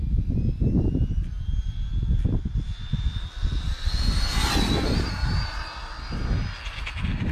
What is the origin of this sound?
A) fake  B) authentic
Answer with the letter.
B